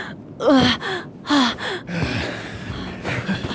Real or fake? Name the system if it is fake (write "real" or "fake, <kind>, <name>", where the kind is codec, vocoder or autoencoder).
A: real